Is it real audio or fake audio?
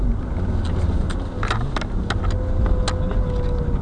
real